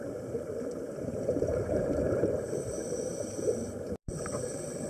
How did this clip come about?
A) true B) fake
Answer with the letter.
B